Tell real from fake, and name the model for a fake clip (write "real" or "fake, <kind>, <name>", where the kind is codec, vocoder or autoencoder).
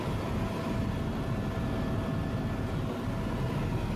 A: real